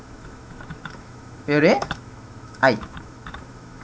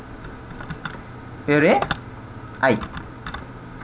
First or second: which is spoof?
first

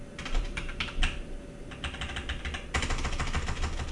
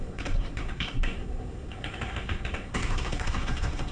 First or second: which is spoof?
second